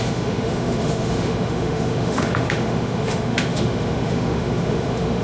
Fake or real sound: fake